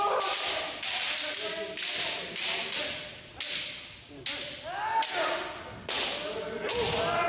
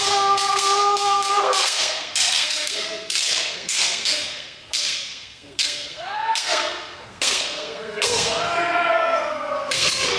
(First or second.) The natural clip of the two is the first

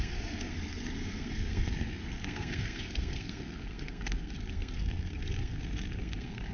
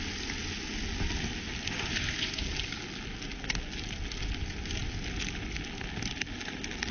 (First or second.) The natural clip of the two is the second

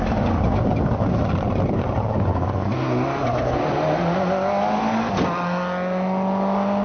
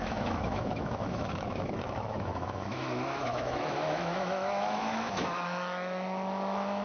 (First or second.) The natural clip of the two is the first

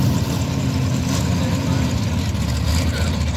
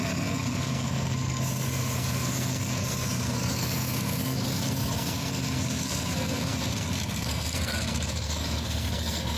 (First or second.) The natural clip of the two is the first